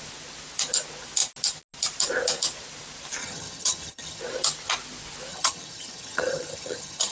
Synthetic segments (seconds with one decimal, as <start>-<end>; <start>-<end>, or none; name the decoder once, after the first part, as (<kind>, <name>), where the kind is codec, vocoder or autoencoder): 3.2-4.2 (vocoder, HiFi-GAN); 5.3-7.1